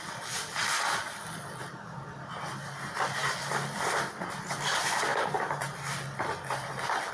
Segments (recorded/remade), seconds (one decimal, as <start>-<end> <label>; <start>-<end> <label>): 0.0-7.1 recorded

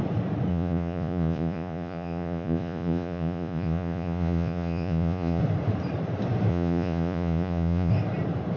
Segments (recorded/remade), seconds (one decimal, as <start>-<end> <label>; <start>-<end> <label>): 0.0-0.5 recorded; 0.5-5.4 remade; 5.4-6.5 recorded; 6.5-7.9 remade; 7.9-8.6 recorded